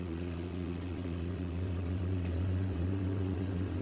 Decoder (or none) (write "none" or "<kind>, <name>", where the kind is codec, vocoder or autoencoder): vocoder, WaveNeXt